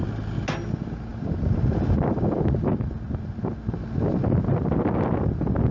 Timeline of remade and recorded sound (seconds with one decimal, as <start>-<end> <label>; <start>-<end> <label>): 0.0-5.7 recorded